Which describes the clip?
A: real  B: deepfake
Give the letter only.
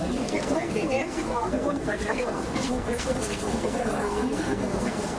B